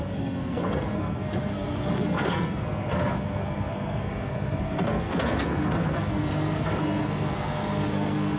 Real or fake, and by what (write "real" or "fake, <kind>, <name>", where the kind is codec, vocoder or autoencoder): fake, codec, SNAC